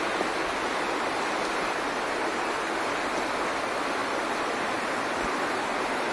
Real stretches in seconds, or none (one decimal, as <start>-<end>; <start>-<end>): 0.0-6.1